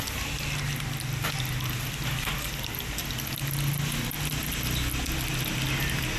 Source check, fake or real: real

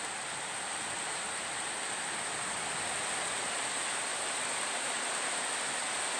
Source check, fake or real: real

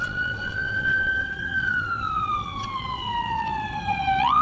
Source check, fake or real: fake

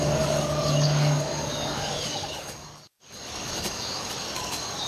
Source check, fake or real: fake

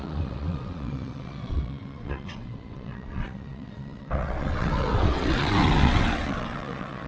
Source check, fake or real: fake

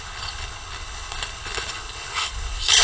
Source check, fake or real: fake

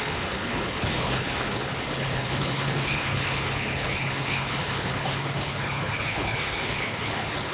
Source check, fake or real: fake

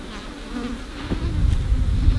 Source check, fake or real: real